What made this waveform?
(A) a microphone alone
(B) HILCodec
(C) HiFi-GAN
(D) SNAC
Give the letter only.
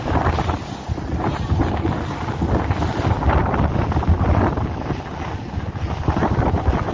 A